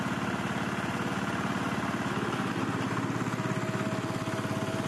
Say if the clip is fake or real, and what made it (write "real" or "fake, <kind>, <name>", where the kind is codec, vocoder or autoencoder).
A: real